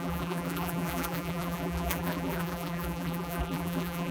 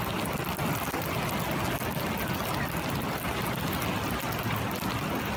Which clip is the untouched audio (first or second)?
second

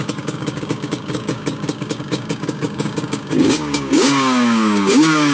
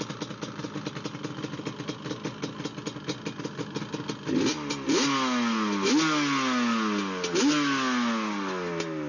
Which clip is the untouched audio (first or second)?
second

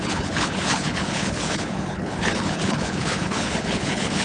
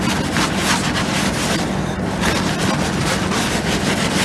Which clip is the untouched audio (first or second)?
second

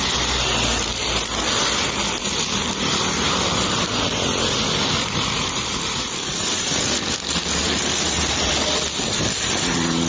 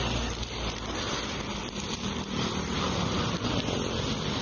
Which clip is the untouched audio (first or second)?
first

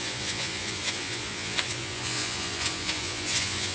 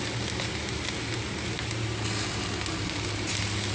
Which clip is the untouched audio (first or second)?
second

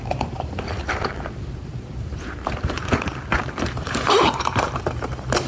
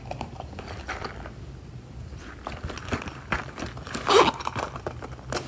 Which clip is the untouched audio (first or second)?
second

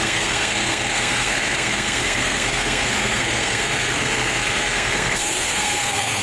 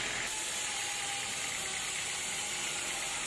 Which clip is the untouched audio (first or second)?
second